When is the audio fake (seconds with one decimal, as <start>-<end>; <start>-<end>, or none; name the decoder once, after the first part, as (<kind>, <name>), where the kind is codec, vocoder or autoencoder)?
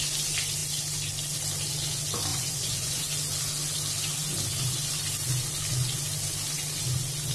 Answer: 2.3-3.0 (vocoder, Vocos)